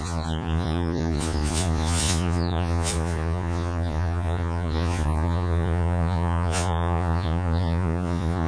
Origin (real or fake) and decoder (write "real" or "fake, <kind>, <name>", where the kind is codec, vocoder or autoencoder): fake, vocoder, Vocos